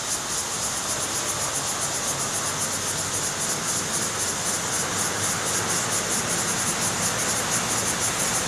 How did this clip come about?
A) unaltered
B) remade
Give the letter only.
A